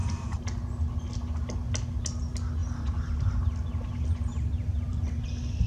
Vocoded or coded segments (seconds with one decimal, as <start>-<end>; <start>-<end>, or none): 2.6-3.2